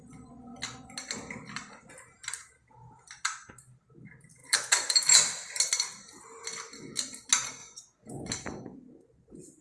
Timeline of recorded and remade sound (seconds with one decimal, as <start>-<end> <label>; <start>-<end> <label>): 0.0-7.6 recorded; 7.6-8.3 remade; 8.3-9.6 recorded